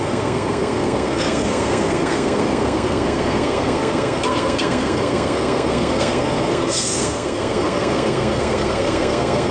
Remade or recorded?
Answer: remade